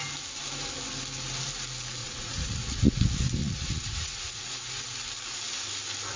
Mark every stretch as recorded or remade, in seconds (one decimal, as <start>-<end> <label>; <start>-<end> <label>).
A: 0.0-2.0 recorded; 2.0-3.0 remade; 3.0-3.4 recorded; 3.4-4.7 remade; 4.7-6.2 recorded